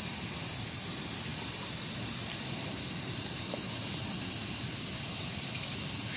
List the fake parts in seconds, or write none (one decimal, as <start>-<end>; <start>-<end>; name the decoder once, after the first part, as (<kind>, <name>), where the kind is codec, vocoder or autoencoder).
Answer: 0.0-6.2 (vocoder, BigVGAN v2)